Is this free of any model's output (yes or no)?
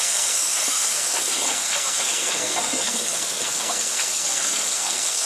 no